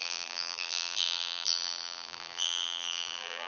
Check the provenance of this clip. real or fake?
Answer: fake